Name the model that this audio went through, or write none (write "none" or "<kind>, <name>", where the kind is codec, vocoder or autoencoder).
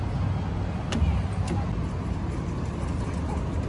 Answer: none